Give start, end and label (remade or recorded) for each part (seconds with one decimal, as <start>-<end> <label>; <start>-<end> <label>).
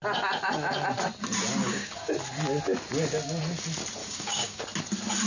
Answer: 0.0-1.6 recorded; 1.6-2.1 remade; 2.1-4.0 recorded; 4.0-4.6 remade; 4.6-5.3 recorded